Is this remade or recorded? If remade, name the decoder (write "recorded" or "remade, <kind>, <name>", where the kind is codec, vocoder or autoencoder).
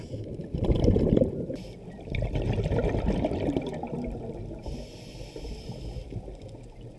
recorded